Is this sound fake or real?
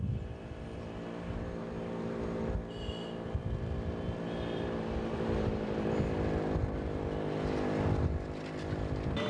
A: real